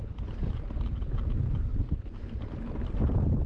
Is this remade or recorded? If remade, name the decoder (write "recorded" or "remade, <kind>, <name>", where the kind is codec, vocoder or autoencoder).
recorded